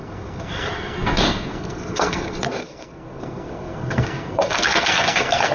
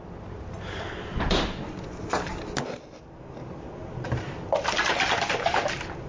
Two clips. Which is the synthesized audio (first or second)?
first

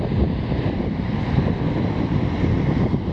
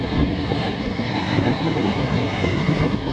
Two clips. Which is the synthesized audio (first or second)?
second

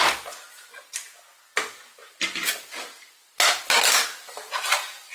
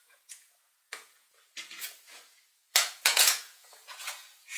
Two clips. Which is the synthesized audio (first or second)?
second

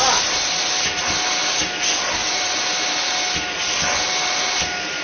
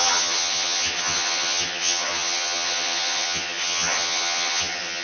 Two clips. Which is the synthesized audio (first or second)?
second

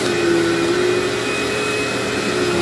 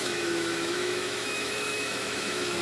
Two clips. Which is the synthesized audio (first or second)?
second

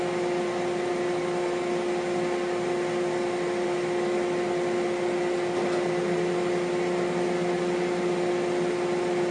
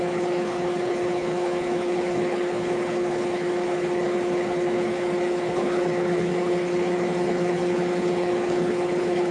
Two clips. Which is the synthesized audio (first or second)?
second